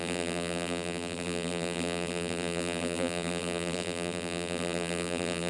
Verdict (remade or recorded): remade